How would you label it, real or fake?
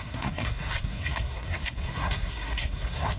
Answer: fake